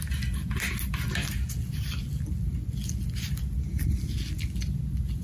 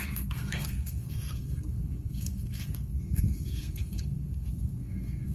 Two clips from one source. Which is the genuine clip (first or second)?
first